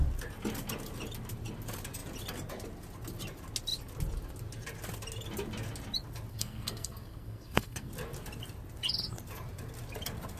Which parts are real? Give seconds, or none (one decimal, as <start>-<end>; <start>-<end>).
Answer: 0.0-6.3; 7.9-10.4